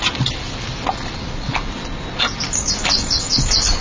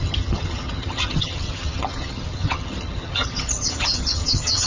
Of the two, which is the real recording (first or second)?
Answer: first